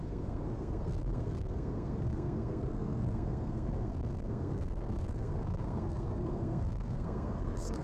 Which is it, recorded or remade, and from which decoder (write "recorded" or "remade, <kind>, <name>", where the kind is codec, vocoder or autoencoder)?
remade, codec, SNAC